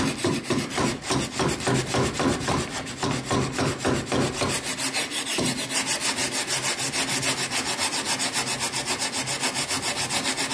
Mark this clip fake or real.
real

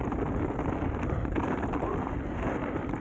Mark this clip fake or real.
real